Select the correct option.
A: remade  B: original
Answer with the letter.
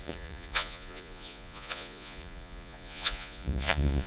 A